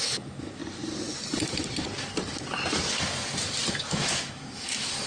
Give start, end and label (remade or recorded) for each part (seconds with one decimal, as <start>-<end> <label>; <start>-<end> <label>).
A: 0.0-0.6 remade; 0.6-3.7 recorded; 3.7-5.1 remade